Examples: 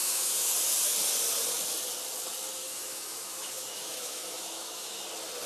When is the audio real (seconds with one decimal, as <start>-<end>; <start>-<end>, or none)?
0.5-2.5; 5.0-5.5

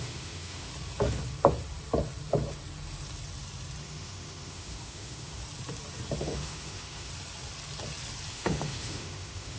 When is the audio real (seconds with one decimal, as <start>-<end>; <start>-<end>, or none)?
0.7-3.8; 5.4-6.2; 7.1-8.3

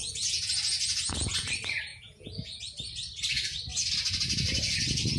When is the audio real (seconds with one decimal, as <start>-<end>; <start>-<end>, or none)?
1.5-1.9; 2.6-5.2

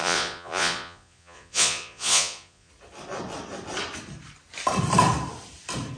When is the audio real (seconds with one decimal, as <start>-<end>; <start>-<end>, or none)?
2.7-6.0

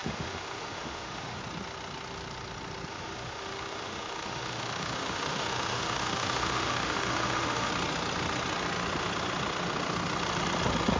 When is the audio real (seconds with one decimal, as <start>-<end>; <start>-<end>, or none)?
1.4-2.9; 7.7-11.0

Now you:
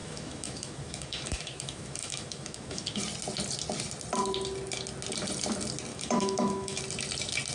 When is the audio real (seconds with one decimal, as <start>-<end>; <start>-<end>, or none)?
3.0-5.9; 6.8-7.5